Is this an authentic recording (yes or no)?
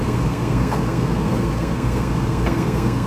no